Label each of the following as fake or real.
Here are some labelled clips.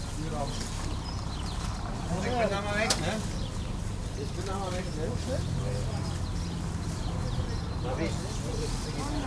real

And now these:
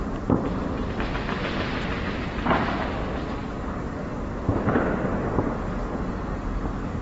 real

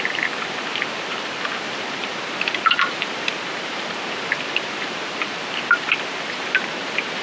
fake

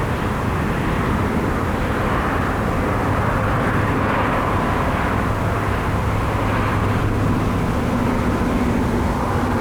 real